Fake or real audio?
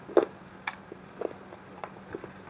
real